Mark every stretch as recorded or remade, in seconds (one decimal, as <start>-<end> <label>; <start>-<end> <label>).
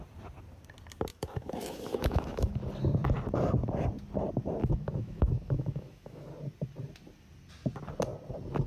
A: 0.0-1.1 recorded; 1.1-2.6 remade; 2.6-4.6 recorded; 4.6-6.3 remade; 6.3-8.7 recorded